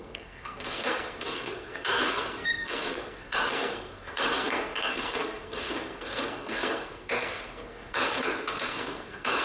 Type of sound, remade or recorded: remade